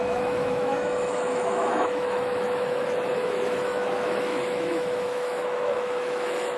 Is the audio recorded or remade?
remade